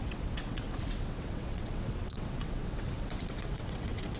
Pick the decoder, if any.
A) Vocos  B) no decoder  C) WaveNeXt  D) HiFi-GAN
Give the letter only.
C